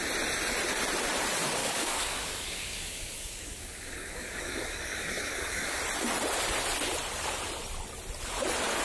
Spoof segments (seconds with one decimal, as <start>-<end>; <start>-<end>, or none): 1.6-5.8